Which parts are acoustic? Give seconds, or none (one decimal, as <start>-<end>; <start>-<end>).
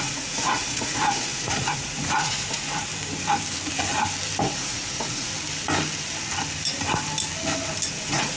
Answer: 2.9-4.4; 5.3-7.9